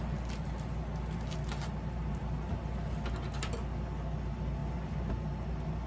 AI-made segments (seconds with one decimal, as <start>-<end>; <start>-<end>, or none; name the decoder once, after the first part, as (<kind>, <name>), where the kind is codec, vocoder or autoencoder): none